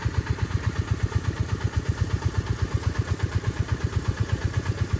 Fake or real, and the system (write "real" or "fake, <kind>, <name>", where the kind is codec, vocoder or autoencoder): real